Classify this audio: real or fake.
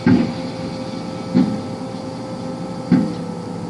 real